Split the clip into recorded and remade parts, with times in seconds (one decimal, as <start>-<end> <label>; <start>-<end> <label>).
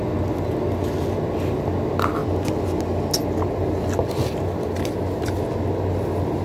0.0-6.4 recorded